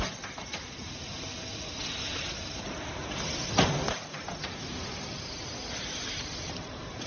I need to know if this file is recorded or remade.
recorded